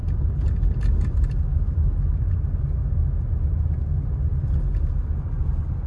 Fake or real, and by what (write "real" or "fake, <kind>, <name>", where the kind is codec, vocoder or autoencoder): real